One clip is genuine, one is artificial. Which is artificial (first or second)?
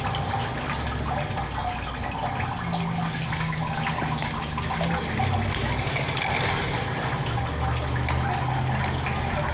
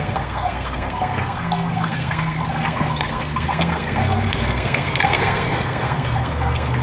second